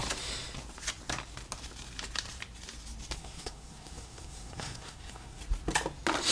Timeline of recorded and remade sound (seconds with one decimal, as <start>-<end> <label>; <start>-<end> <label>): 0.0-3.2 recorded; 3.2-5.4 remade; 5.4-6.3 recorded